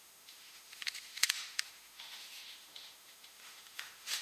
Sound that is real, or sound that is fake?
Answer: fake